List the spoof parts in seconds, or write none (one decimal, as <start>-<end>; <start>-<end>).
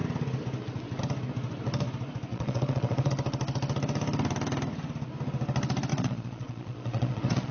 2.3-3.1; 5.9-7.5